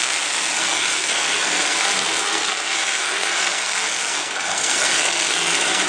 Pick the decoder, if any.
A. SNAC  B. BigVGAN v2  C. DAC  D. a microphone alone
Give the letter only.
A